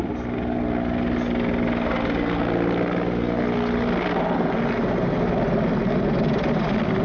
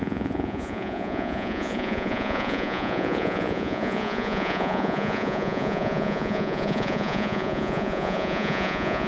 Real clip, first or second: first